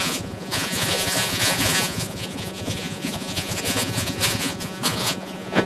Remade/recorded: remade